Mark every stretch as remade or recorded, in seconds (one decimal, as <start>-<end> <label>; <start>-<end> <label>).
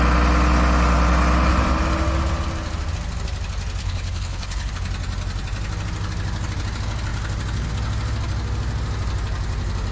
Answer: 0.0-3.8 recorded; 3.8-4.7 remade; 4.7-9.9 recorded